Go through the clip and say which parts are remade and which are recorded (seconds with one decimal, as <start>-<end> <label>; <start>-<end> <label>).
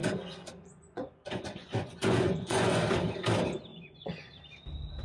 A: 0.0-2.8 remade; 2.8-3.7 recorded; 3.7-4.3 remade; 4.3-5.0 recorded